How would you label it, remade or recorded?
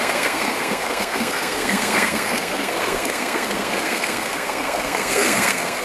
remade